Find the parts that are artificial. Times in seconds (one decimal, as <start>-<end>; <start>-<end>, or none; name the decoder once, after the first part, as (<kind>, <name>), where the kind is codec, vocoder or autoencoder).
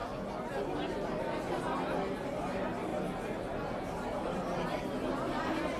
none